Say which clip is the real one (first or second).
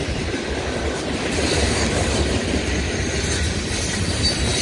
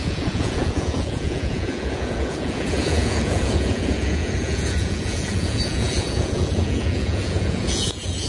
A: first